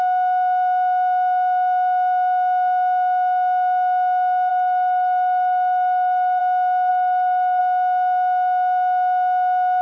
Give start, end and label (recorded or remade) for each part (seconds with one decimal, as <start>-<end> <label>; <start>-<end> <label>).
0.0-4.5 recorded; 4.5-6.4 remade; 6.4-6.9 recorded; 6.9-7.6 remade; 7.6-9.8 recorded